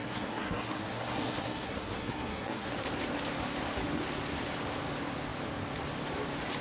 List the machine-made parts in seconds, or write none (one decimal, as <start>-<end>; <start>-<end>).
0.0-2.7